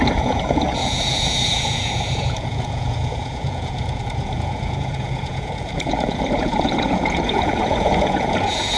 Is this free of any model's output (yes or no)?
no